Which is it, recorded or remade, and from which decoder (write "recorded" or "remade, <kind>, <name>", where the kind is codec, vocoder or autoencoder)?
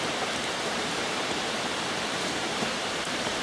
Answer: remade, vocoder, BigVGAN v2